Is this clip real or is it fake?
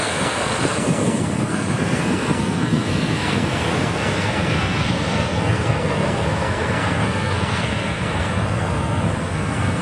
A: fake